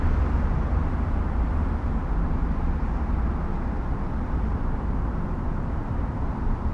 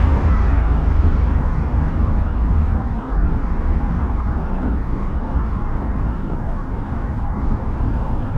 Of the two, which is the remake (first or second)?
second